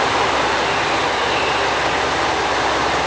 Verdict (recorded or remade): recorded